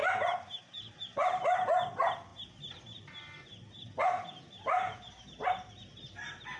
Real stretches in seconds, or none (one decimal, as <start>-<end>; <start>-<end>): 0.0-6.6